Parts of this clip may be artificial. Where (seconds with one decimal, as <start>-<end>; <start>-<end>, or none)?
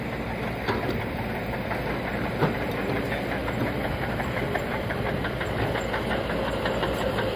2.1-2.7; 3.4-5.1